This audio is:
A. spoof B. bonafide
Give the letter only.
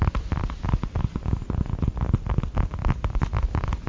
B